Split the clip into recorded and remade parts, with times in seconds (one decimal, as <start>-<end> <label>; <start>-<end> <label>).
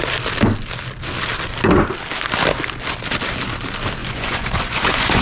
0.0-4.0 recorded; 4.0-5.2 remade